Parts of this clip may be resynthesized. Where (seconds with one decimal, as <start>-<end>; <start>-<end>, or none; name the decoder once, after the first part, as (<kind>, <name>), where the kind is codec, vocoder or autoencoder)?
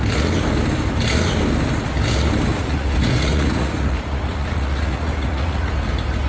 2.5-5.7 (vocoder, Vocos)